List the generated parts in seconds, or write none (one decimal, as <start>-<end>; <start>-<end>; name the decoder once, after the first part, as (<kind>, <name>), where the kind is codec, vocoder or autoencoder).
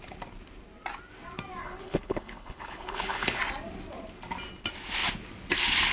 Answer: 1.6-3.4 (codec, HILCodec)